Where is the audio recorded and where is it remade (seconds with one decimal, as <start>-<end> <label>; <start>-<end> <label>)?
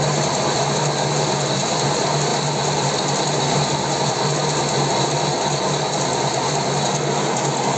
0.0-7.8 recorded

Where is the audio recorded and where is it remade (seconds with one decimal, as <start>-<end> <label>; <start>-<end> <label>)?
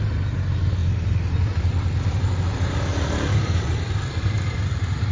0.0-2.9 recorded; 2.9-5.1 remade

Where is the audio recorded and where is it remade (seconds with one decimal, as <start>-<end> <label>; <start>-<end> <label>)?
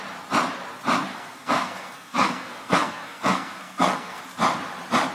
0.0-1.1 recorded; 1.1-4.2 remade; 4.2-5.1 recorded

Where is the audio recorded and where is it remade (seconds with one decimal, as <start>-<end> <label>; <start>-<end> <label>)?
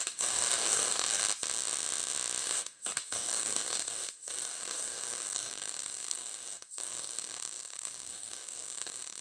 0.0-1.2 remade; 1.2-2.4 recorded; 2.4-9.2 remade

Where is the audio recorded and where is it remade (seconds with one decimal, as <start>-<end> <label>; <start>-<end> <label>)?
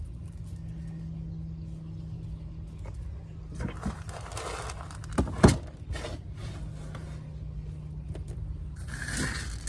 0.0-9.7 recorded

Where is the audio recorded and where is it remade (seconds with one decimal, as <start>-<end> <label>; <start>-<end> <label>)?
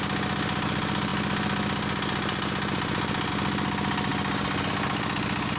0.0-5.6 recorded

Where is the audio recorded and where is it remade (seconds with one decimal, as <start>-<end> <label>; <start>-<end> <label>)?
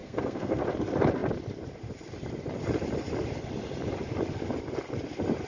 0.0-0.6 remade; 0.6-5.5 recorded